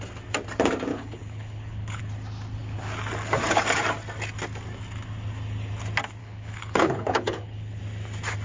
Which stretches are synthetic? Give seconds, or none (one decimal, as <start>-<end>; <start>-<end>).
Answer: 0.9-2.0; 6.2-7.8